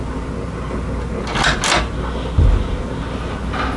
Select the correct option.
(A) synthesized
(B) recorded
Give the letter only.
B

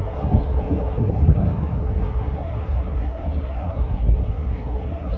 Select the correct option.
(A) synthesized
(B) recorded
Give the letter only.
A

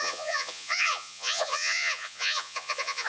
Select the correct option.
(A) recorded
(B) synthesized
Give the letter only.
B